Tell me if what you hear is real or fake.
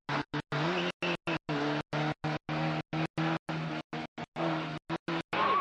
real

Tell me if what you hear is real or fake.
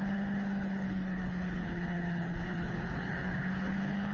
fake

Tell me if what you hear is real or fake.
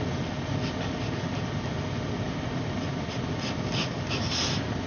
real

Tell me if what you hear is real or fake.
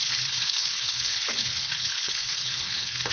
fake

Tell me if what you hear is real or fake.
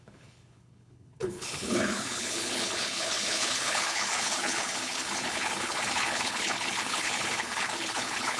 fake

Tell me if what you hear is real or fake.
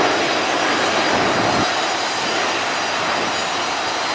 real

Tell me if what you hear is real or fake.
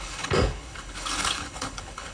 fake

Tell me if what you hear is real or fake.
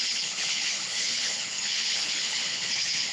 fake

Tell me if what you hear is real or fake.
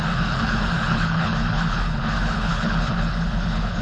fake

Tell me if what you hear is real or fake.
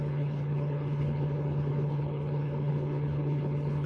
fake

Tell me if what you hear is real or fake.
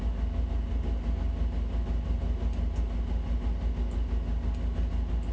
real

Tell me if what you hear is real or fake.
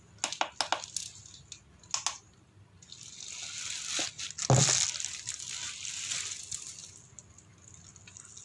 real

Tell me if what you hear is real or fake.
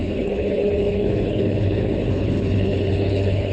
fake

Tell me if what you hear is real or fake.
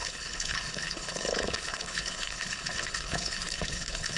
fake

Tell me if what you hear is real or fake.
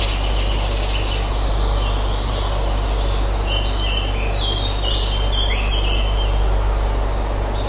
real